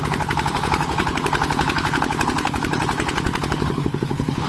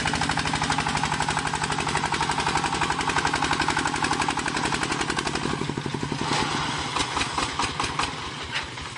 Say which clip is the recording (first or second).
second